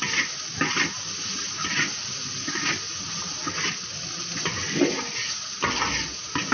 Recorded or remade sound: recorded